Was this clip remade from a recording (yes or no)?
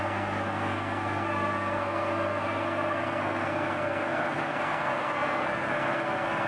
yes